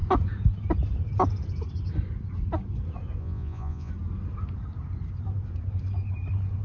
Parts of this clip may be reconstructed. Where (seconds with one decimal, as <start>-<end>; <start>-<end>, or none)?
3.2-3.9